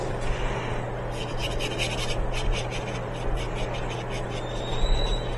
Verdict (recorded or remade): recorded